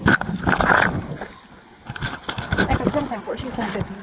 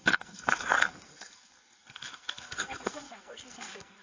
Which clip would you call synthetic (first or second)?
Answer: second